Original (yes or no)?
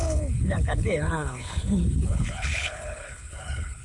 no